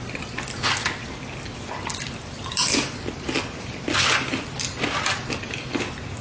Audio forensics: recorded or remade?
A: recorded